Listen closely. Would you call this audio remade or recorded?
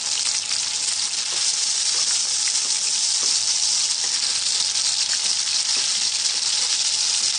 recorded